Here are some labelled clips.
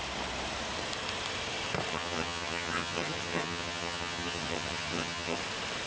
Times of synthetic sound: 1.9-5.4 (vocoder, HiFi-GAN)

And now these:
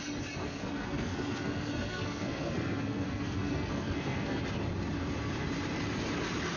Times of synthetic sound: 0.4-4.4 (codec, SNAC)

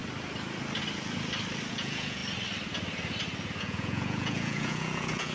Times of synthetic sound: 1.7-2.2 (vocoder, Vocos); 3.6-5.3

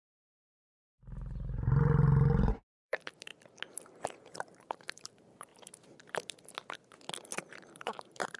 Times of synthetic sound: 0.0-3.3 (vocoder, BigVGAN v2); 3.8-5.5; 7.4-8.4

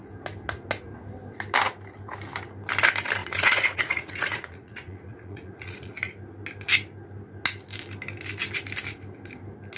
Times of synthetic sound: 3.2-6.1 (vocoder, Vocos)

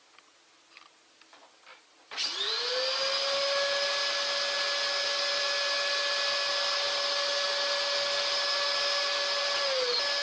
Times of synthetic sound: none

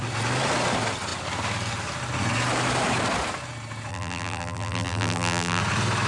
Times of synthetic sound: 3.9-5.6 (vocoder, BigVGAN v2)

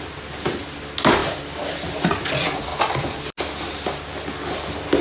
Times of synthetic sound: none